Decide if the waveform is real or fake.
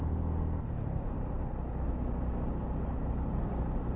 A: real